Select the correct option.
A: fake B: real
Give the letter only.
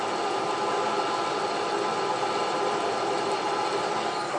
B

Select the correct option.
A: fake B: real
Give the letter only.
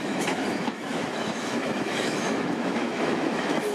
A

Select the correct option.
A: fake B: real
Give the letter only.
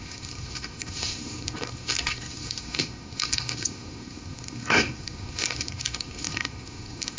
A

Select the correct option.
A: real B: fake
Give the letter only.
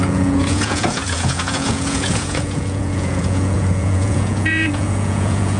B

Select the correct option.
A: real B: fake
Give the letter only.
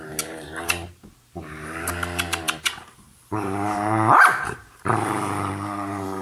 B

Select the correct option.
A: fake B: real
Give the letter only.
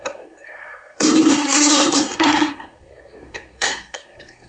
A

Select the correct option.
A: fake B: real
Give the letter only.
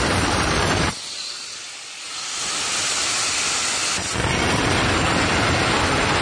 B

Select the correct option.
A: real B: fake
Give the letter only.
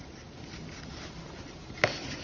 A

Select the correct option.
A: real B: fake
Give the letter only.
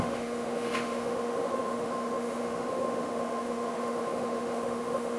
B